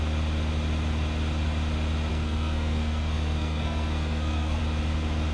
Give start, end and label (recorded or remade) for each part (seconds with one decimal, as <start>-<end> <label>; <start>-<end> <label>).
0.0-2.1 recorded; 2.1-4.6 remade; 4.6-5.3 recorded